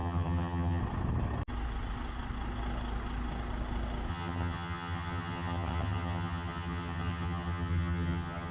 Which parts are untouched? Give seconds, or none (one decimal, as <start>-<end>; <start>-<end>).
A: 0.8-4.1